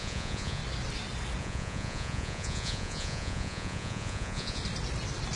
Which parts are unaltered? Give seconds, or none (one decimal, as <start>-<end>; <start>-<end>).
0.6-1.4; 4.6-5.4